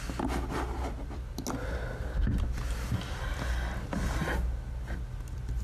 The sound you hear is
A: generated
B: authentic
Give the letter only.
B